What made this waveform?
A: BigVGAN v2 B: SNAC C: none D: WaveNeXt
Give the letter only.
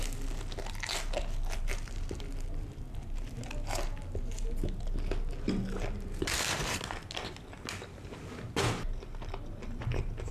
C